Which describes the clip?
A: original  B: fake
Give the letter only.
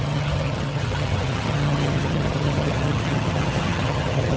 B